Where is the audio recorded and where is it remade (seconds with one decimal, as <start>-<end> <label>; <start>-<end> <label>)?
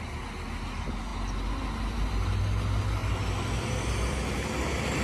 0.0-5.0 recorded